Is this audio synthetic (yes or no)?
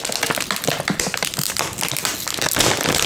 no